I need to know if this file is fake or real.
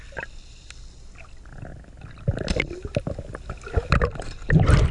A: real